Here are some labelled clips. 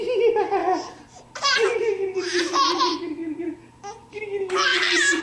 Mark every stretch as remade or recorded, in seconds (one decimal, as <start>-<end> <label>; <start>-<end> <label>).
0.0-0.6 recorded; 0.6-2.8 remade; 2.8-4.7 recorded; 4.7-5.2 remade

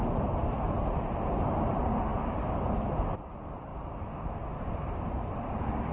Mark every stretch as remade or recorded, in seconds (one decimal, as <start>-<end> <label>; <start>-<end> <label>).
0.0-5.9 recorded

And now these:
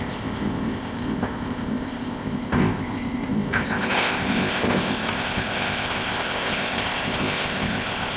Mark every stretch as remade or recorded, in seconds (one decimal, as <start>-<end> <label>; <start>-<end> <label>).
0.0-8.2 remade

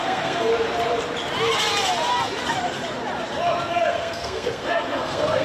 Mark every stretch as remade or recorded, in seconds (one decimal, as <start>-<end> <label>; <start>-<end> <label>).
0.0-0.5 remade; 0.5-3.7 recorded; 3.7-5.4 remade

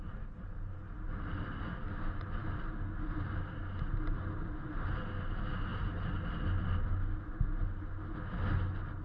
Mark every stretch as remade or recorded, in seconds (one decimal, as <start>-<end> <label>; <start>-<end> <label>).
0.0-9.0 recorded

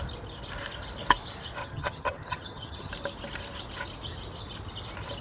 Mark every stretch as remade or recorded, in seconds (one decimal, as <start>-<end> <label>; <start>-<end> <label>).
0.0-1.6 recorded; 1.6-2.9 remade; 2.9-5.2 recorded